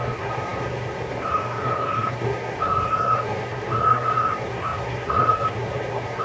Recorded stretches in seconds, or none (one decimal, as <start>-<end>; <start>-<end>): none